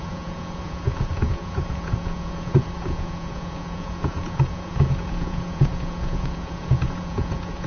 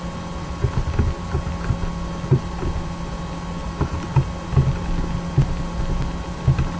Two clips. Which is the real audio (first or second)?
second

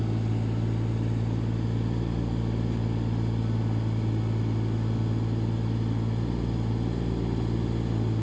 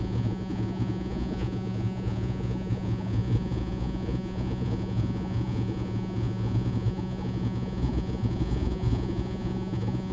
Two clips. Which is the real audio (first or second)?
first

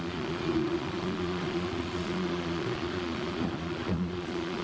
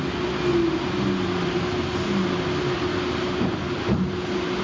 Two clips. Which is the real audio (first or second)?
second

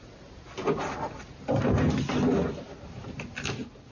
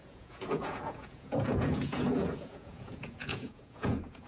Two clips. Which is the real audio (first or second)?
first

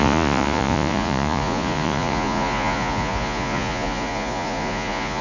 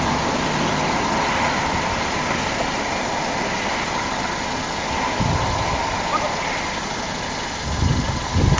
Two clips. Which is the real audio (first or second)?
second